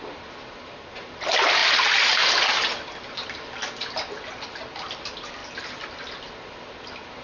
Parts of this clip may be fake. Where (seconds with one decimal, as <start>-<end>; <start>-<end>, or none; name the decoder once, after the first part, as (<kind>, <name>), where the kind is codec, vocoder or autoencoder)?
none

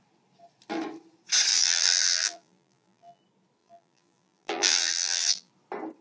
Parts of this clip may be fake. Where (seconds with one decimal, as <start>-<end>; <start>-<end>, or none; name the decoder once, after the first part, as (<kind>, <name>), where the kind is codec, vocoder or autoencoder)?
1.5-3.2 (vocoder, BigVGAN v2); 3.6-5.5

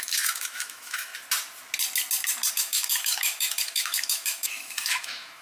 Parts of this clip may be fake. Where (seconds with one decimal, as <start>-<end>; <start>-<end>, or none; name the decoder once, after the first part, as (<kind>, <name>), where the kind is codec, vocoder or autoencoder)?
0.0-1.1 (autoencoder, DAC-VAE); 2.5-5.4